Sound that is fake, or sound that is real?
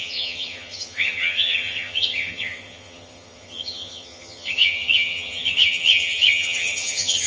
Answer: fake